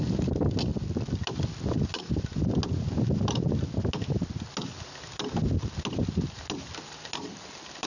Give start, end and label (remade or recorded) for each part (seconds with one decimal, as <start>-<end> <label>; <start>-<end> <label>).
0.0-7.9 recorded